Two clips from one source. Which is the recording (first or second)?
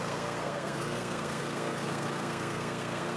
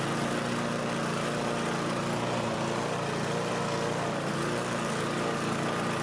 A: second